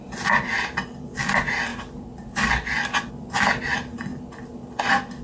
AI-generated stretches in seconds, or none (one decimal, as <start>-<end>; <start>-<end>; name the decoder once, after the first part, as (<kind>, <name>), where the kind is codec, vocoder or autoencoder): 1.7-3.1 (vocoder, BigVGAN v2); 4.1-4.8